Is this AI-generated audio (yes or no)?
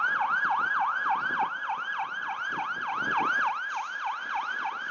no